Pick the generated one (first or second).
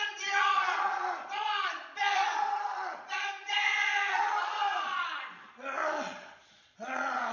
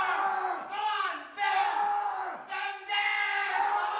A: first